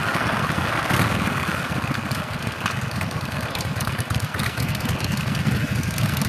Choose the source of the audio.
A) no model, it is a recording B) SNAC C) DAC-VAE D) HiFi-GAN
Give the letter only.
B